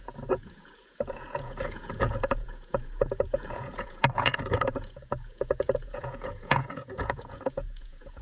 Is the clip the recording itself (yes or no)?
no